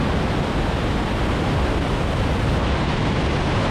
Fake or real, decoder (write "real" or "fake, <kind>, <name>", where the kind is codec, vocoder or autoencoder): real